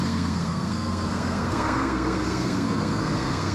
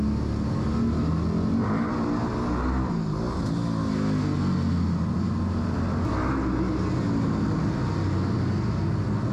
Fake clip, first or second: first